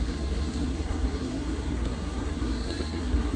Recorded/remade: remade